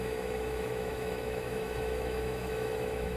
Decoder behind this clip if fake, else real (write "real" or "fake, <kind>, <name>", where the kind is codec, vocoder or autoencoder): fake, autoencoder, DAC-VAE